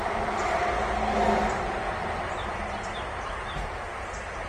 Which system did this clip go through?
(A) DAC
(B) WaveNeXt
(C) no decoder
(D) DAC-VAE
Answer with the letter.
C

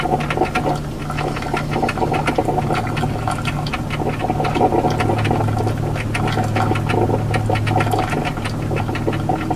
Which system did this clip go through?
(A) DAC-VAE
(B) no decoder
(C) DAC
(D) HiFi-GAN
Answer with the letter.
B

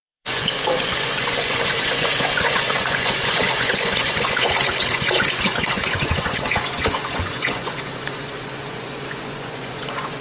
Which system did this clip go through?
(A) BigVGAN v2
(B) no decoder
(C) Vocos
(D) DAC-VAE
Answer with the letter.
C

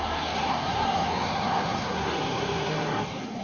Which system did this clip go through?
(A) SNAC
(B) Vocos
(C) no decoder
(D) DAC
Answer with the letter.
A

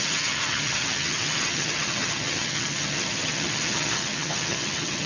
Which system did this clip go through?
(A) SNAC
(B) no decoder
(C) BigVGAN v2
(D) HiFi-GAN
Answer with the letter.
D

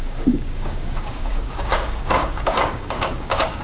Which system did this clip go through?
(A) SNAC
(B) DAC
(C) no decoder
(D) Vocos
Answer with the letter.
B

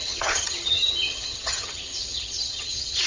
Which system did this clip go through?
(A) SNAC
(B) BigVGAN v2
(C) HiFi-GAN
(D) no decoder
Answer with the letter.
C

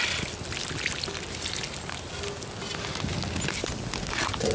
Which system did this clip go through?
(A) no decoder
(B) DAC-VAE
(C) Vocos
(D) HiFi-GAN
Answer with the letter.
A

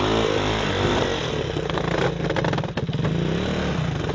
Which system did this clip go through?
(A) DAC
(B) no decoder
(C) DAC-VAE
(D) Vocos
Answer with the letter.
B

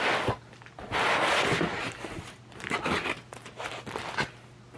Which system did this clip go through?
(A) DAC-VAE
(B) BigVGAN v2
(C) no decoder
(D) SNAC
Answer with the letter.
C